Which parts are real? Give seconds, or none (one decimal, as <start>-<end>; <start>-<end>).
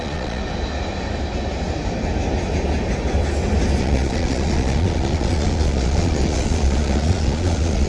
0.4-3.8